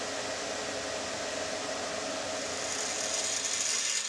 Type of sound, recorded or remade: recorded